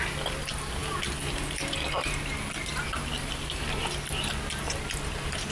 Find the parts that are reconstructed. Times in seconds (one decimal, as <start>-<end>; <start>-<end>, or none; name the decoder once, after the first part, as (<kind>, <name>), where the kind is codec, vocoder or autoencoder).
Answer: none